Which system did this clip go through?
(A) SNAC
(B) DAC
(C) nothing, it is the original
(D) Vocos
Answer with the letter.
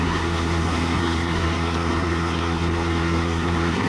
A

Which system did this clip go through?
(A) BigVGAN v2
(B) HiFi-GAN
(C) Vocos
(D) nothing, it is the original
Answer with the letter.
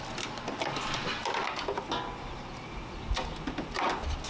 D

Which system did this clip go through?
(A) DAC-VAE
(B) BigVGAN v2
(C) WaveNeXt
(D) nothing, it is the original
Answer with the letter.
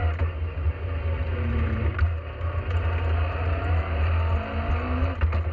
D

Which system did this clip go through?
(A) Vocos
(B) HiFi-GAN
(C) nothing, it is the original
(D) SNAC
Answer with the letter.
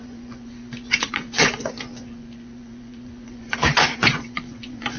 A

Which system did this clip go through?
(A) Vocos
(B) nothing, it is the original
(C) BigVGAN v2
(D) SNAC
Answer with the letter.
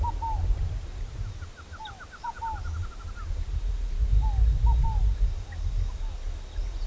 B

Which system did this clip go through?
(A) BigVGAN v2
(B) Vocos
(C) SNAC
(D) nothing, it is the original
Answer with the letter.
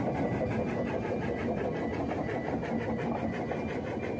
D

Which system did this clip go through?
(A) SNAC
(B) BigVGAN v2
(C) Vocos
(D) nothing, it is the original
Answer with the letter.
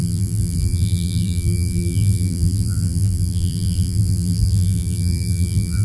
B